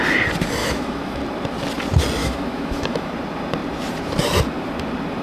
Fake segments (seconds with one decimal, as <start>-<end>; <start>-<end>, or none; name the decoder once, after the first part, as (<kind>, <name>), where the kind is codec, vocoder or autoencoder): 0.6-1.2 (autoencoder, DAC-VAE); 2.2-3.1